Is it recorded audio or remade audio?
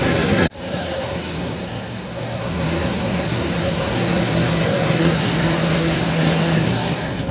remade